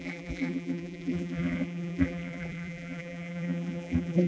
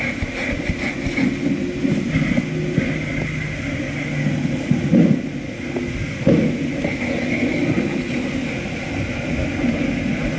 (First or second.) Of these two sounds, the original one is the second